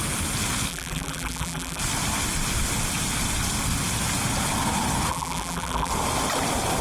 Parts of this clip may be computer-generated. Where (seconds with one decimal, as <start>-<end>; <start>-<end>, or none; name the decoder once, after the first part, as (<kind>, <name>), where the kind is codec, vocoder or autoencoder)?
0.7-1.8 (vocoder, BigVGAN v2); 5.1-5.9